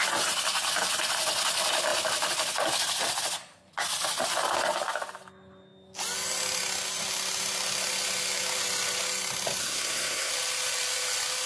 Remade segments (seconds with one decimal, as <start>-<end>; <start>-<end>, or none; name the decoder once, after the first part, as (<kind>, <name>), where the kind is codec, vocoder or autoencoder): 9.6-10.3 (codec, SNAC)